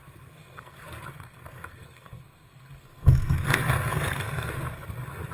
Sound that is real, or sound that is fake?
fake